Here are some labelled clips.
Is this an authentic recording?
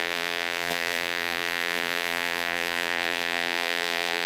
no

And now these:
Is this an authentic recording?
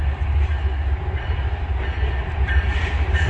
yes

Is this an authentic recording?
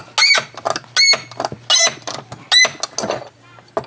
yes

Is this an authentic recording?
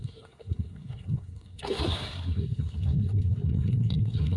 no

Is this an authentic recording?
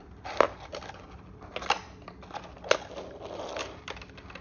yes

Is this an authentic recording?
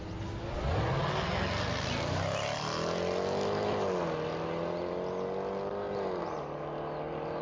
yes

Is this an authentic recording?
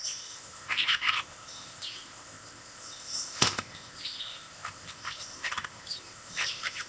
no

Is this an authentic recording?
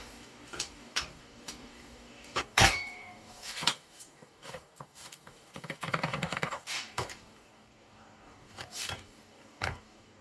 no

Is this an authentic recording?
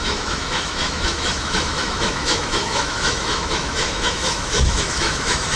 no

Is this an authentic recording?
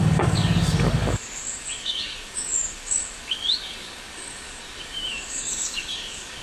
no